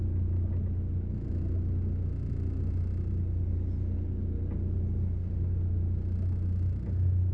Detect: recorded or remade recorded